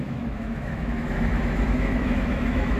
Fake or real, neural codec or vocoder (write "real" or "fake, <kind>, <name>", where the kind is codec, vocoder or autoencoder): fake, autoencoder, DAC-VAE